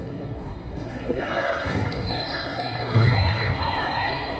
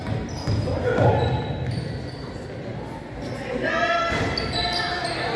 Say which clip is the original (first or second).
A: second